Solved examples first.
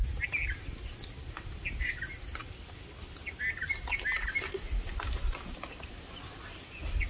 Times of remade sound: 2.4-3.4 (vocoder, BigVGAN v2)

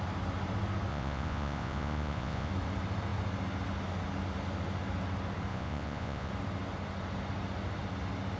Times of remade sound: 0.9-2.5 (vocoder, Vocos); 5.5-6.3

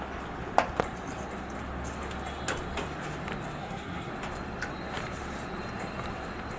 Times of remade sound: 3.6-4.1 (codec, SNAC)

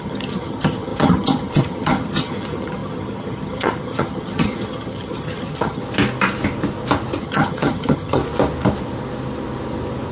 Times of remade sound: 0.0-5.8 (vocoder, HiFi-GAN); 7.2-8.2